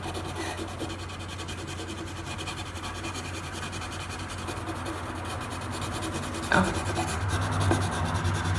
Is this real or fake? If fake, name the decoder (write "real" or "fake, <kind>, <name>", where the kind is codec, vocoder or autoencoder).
real